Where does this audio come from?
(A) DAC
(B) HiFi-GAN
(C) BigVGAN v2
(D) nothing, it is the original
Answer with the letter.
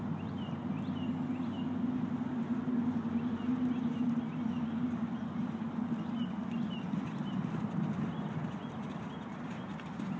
D